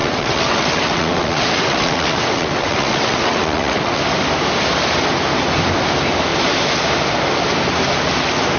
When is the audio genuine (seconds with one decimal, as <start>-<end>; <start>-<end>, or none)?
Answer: 4.0-8.6